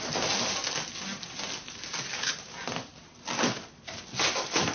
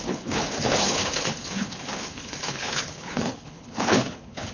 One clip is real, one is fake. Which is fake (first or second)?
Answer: second